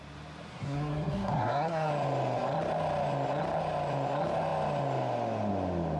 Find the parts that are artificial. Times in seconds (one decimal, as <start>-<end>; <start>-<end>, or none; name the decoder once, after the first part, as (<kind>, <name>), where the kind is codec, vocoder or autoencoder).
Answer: 0.5-1.9 (codec, SNAC)